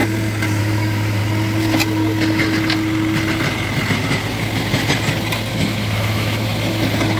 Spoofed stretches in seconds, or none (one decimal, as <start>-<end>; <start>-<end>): 0.6-1.2; 5.5-6.5